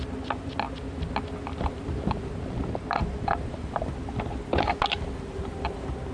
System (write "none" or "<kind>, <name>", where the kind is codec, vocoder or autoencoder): none